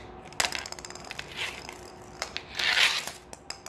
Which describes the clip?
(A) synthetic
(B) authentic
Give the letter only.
B